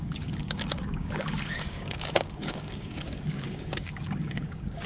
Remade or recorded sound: remade